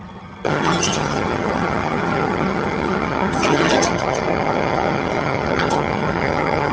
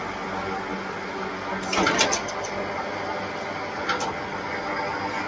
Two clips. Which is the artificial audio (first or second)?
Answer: first